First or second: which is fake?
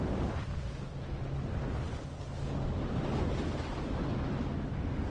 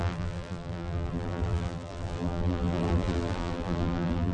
second